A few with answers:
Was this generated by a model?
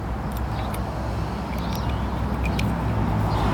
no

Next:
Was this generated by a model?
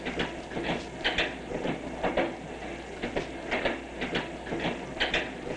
no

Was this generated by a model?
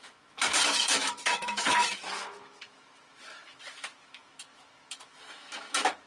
yes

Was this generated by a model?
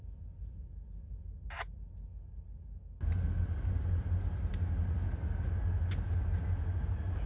no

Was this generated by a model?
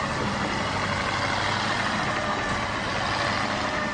no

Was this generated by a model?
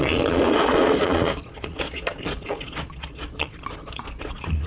yes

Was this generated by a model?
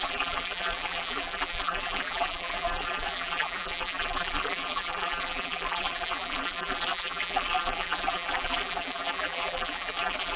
yes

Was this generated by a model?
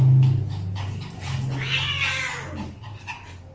no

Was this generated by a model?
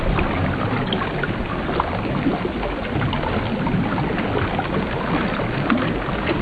no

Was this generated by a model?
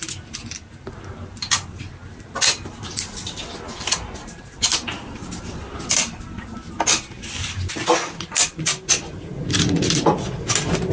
no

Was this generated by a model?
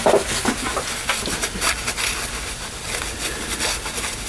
no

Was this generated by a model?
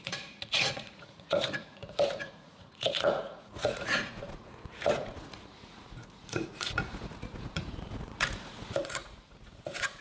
yes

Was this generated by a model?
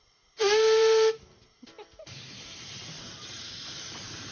yes